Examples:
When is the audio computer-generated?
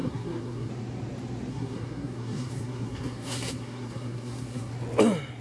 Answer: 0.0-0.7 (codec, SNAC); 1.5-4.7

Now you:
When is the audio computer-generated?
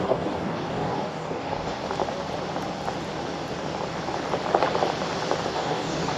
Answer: 0.0-1.8 (codec, DAC); 5.5-6.2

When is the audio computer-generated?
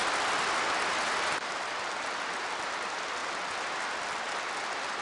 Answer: none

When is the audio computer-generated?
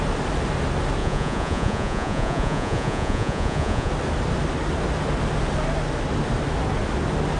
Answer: 1.0-3.9 (vocoder, Vocos)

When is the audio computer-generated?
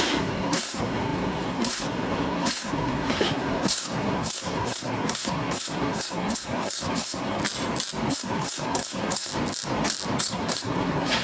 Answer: 0.0-7.4 (codec, SNAC); 8.1-9.3; 10.2-11.2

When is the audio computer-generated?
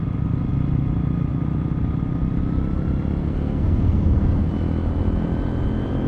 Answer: 3.2-4.5 (codec, SNAC)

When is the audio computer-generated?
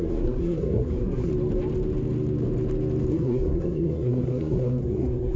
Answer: 0.0-1.3 (codec, SNAC); 3.1-5.4